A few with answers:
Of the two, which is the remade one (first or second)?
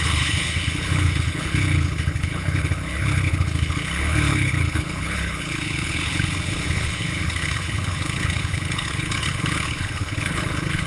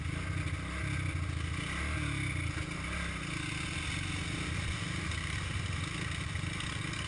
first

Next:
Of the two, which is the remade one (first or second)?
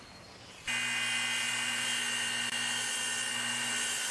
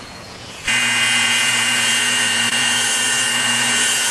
second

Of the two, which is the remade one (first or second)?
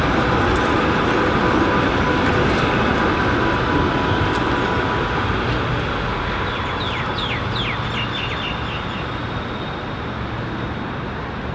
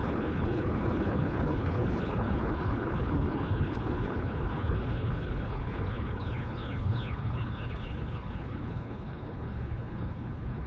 second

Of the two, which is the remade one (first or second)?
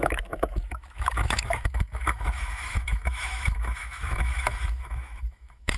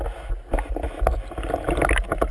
first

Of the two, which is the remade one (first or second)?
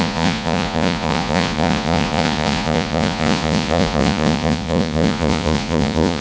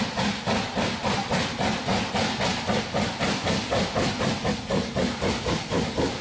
first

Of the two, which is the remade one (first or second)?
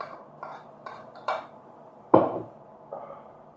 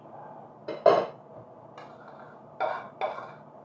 first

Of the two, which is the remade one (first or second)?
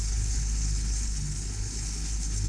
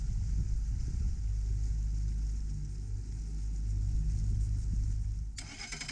first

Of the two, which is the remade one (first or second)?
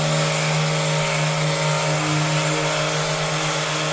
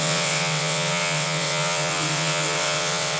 second